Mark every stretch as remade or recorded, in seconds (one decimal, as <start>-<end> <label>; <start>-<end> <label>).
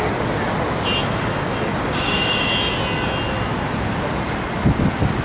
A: 0.0-1.7 recorded; 1.7-2.5 remade; 2.5-5.2 recorded